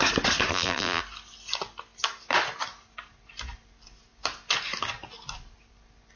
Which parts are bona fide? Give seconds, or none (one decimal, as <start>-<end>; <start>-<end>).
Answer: 0.0-0.5; 1.0-6.2